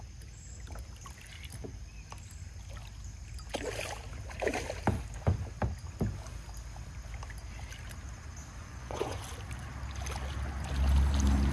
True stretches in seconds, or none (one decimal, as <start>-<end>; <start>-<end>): 0.0-8.6; 9.2-11.5